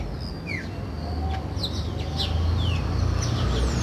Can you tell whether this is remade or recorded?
recorded